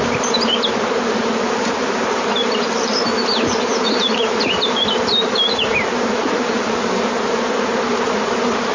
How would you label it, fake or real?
fake